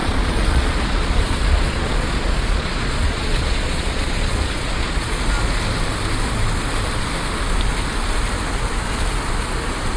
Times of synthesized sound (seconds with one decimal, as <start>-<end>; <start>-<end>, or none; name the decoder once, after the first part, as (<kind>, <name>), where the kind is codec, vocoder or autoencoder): 0.0-5.2 (vocoder, Vocos)